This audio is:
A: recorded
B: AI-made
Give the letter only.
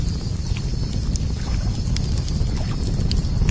A